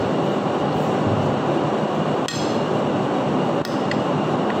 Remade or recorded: recorded